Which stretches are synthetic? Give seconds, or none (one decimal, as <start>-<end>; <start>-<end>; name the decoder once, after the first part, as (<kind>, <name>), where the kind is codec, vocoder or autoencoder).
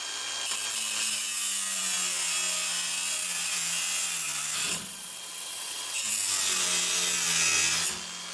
4.6-6.1 (vocoder, WaveNeXt)